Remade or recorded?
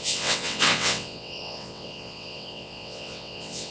remade